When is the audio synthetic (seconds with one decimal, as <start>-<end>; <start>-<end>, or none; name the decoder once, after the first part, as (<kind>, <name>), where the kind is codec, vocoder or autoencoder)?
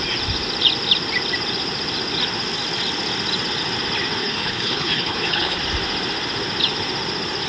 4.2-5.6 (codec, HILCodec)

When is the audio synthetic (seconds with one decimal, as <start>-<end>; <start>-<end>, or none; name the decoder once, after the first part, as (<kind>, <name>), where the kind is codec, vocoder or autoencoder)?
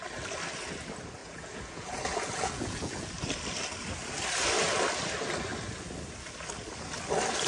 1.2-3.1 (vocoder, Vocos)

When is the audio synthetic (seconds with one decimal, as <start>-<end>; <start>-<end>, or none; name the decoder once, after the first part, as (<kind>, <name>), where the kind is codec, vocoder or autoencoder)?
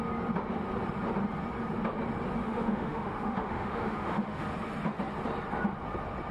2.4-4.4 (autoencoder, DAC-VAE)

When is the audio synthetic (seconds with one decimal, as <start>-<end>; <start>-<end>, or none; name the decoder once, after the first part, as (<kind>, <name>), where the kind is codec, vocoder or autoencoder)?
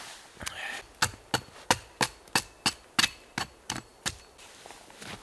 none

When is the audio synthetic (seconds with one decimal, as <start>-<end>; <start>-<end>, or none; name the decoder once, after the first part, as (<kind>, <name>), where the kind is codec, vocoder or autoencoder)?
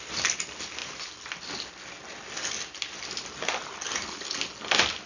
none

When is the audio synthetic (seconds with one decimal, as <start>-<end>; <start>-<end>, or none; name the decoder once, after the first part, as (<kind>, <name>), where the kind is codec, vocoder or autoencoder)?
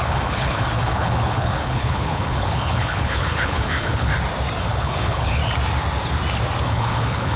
0.0-4.1 (codec, HILCodec); 4.6-5.4; 6.6-7.4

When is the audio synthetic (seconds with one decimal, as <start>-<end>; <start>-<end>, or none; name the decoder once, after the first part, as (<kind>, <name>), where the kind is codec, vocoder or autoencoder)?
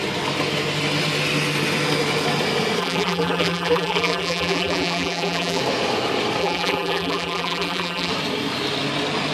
2.8-5.6 (vocoder, BigVGAN v2); 6.4-8.1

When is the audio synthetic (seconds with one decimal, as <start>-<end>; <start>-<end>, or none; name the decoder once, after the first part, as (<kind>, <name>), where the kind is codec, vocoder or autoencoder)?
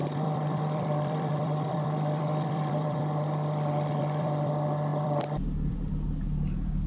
0.0-3.0 (vocoder, BigVGAN v2); 3.9-4.5; 4.9-5.9